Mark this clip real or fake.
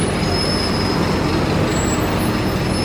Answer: real